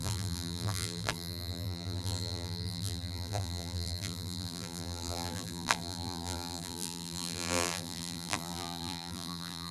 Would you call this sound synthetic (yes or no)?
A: yes